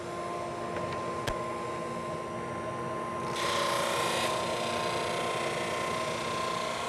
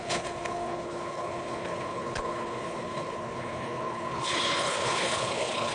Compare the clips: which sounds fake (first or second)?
second